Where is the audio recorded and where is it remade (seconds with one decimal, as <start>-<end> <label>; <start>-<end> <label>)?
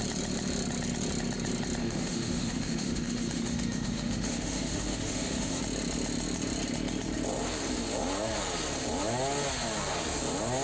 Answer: 0.0-1.8 recorded; 1.8-5.6 remade; 5.6-10.6 recorded